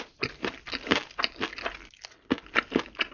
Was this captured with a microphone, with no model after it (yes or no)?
yes